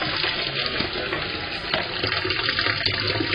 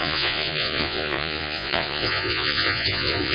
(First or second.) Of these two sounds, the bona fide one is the first